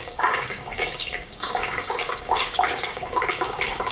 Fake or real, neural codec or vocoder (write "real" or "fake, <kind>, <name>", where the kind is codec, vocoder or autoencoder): fake, codec, DAC